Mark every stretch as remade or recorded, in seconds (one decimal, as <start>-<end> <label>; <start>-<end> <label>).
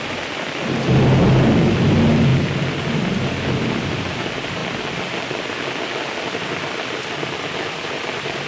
0.0-8.5 recorded